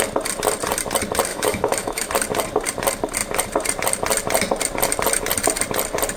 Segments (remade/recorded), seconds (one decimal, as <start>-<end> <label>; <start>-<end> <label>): 0.0-1.3 recorded; 1.3-2.1 remade; 2.1-6.2 recorded